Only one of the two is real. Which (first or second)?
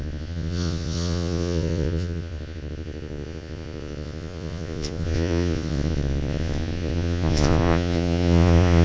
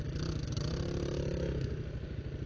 second